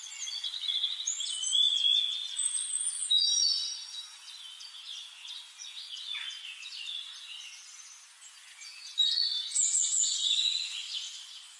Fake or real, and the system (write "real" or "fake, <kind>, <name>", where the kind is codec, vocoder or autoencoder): fake, vocoder, Vocos